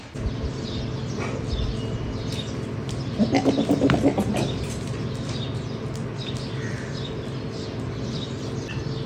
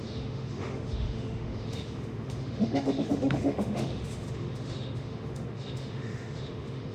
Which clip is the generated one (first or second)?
second